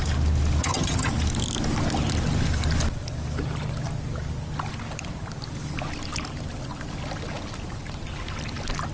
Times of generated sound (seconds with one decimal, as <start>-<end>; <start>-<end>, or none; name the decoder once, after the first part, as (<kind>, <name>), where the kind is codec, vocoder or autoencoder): 0.6-1.1 (vocoder, HiFi-GAN)